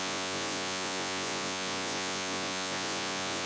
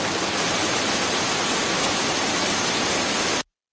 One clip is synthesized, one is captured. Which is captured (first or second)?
second